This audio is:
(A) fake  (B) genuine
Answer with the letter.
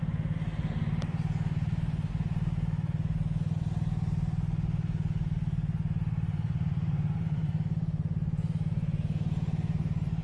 B